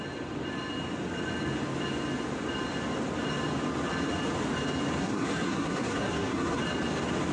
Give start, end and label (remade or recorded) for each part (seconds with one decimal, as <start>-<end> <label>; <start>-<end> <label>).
0.0-5.0 recorded; 5.0-6.6 remade; 6.6-7.3 recorded